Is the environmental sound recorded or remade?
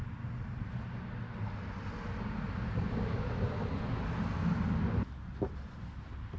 recorded